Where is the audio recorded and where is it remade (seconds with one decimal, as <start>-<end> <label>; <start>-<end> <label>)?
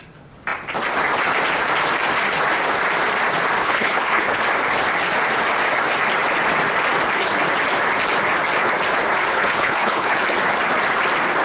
0.0-3.6 recorded; 3.6-4.4 remade; 4.4-9.3 recorded; 9.3-10.2 remade; 10.2-11.4 recorded